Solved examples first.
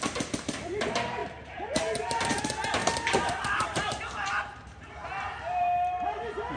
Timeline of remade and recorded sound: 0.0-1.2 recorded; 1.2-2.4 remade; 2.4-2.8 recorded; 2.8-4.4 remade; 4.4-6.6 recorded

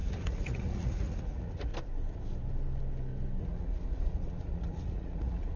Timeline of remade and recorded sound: 0.0-1.7 remade; 1.7-3.4 recorded; 3.4-5.6 remade

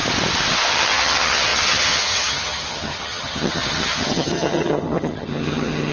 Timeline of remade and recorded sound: 0.0-0.7 recorded; 0.7-5.9 remade

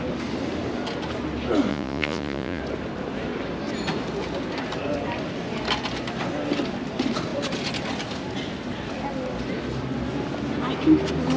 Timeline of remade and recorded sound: 0.0-1.7 recorded; 1.7-2.6 remade; 2.6-11.4 recorded

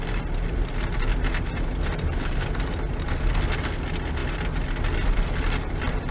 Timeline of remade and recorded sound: 0.0-6.1 recorded

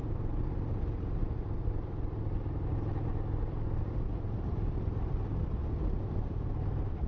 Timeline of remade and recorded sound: 0.0-7.1 recorded

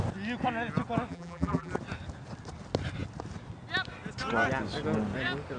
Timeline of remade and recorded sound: 0.0-1.1 recorded; 1.1-1.7 remade; 1.7-5.6 recorded